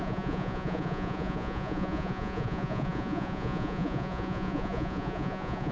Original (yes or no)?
no